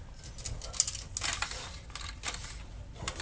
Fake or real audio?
real